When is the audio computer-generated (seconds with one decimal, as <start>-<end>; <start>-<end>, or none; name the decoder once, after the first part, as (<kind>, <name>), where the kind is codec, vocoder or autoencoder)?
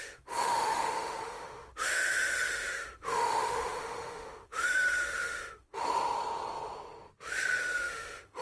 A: 0.0-5.8 (autoencoder, DAC-VAE); 7.6-8.4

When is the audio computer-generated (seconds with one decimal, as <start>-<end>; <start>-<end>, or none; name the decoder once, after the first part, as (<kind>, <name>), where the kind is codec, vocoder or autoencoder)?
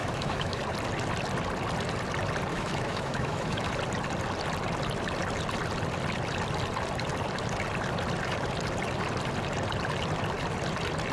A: 0.0-0.6 (autoencoder, DAC-VAE); 2.5-3.7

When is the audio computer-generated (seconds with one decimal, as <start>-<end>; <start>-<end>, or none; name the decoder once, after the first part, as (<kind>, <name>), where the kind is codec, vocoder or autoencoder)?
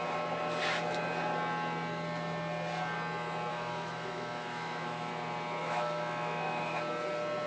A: 3.5-5.1 (autoencoder, DAC-VAE); 5.6-6.6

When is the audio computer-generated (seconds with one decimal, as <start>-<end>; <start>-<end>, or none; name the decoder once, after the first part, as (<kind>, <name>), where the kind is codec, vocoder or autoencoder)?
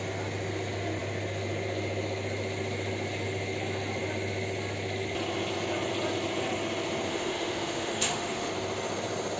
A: 7.1-8.5 (autoencoder, DAC-VAE)